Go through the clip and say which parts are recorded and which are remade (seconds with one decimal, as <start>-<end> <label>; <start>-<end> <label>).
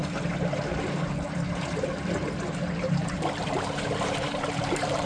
0.0-3.1 recorded; 3.1-5.1 remade